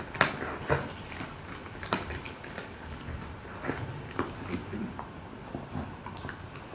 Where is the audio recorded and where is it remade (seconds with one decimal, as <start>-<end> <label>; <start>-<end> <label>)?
0.0-6.7 recorded